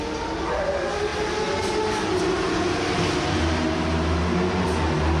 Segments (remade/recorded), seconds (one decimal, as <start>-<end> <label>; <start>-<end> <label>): 0.0-5.2 recorded